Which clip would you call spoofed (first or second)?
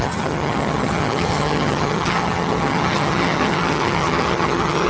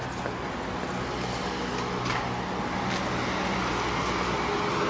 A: first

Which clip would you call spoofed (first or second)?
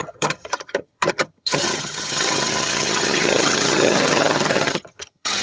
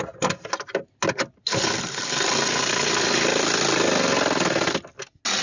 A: first